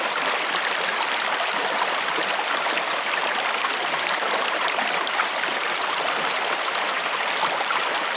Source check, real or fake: real